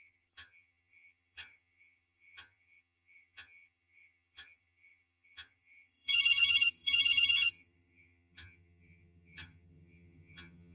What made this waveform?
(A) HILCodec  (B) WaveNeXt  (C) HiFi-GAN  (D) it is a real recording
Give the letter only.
C